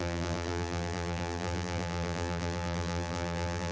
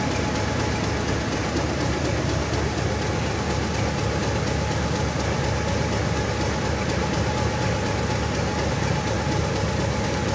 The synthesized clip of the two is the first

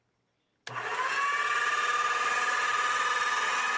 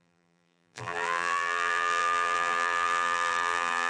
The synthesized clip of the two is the second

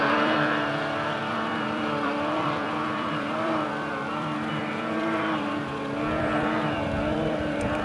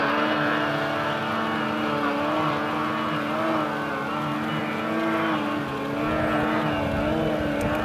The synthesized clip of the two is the first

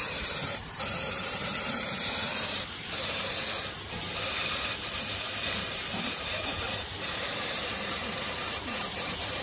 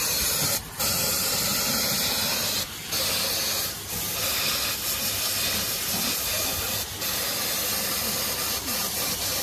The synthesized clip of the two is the first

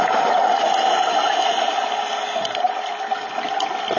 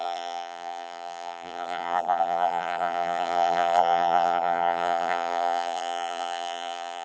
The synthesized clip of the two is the second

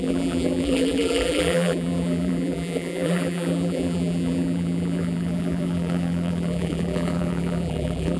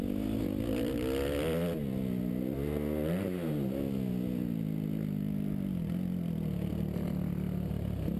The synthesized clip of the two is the first